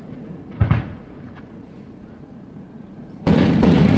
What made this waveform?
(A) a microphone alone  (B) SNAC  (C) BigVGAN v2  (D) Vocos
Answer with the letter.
D